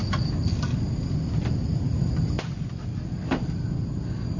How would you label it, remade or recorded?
recorded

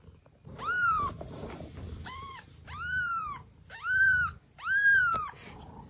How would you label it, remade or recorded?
remade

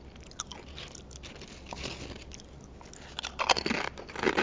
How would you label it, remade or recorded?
recorded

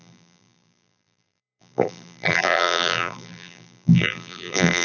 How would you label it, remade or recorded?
remade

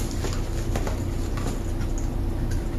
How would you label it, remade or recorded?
recorded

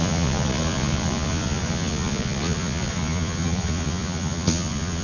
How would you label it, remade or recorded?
remade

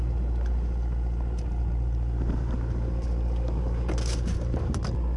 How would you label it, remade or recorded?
recorded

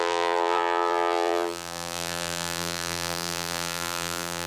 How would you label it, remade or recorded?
remade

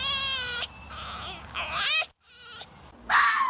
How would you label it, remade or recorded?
recorded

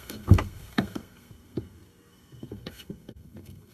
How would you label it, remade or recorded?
remade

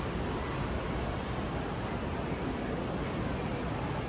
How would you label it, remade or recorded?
recorded